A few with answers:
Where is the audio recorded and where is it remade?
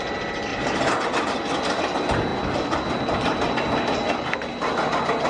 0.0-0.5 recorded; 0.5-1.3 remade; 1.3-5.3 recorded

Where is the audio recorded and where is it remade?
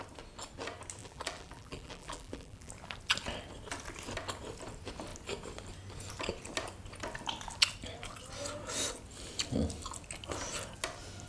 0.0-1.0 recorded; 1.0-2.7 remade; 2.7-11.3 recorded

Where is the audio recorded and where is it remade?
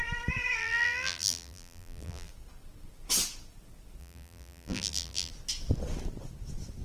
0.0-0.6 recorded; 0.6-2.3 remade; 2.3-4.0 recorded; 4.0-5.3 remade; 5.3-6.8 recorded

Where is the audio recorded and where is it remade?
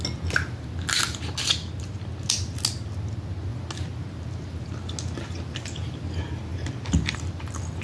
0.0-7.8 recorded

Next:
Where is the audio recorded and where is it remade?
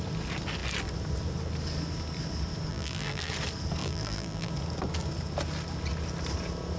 0.0-2.7 recorded; 2.7-3.3 remade; 3.3-3.8 recorded; 3.8-4.5 remade; 4.5-6.8 recorded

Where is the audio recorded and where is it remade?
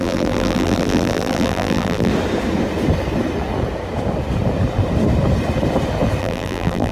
0.0-2.1 remade; 2.1-6.2 recorded; 6.2-6.9 remade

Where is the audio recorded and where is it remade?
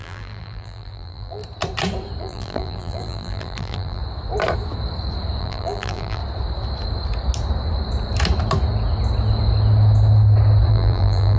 0.0-1.4 remade; 1.4-2.2 recorded; 2.2-4.0 remade; 4.0-5.4 recorded; 5.4-6.2 remade; 6.2-10.7 recorded; 10.7-11.4 remade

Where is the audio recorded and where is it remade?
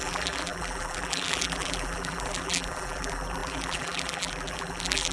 0.0-5.1 remade